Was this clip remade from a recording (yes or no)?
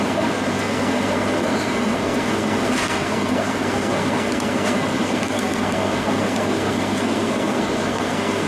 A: yes